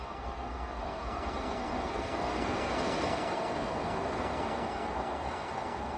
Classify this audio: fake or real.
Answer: fake